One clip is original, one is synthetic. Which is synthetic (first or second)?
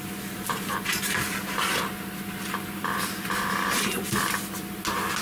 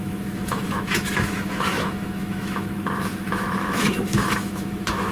second